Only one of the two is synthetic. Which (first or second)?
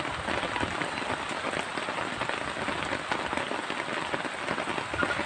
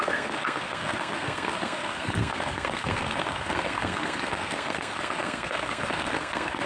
second